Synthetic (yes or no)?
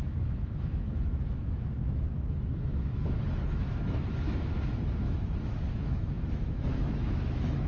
yes